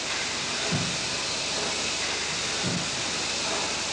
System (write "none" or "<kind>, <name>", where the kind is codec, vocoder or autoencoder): none